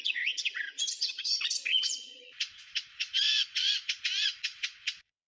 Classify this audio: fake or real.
fake